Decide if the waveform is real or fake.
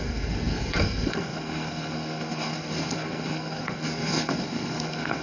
fake